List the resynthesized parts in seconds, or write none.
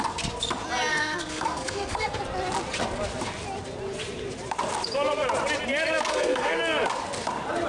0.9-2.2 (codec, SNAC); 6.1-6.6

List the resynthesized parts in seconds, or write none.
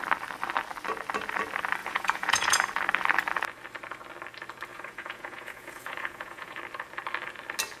1.8-2.7 (vocoder, Vocos); 4.7-6.6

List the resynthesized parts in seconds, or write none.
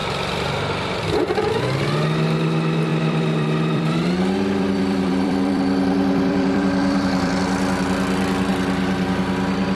0.0-1.5 (vocoder, BigVGAN v2); 2.9-7.4